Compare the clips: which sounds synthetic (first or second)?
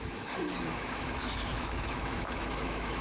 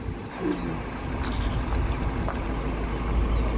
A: first